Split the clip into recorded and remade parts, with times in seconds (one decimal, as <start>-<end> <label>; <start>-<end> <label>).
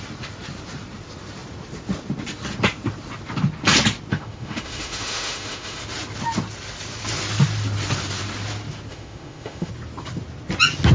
0.0-4.1 recorded; 4.1-5.8 remade; 5.8-8.9 recorded; 8.9-9.7 remade; 9.7-10.9 recorded